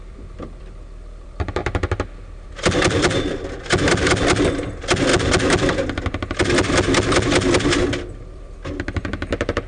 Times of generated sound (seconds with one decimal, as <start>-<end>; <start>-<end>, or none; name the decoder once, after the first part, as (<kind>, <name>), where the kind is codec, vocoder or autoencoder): 0.0-5.1 (vocoder, BigVGAN v2); 6.4-9.7